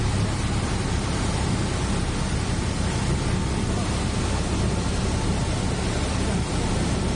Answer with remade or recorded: recorded